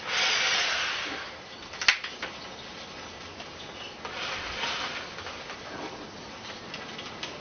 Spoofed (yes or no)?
no